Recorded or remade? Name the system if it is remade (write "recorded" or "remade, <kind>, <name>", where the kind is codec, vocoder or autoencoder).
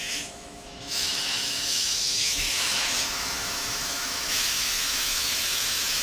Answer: remade, autoencoder, DAC-VAE